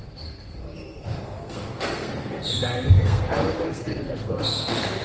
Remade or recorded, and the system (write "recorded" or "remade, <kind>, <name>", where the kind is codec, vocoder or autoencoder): remade, codec, SNAC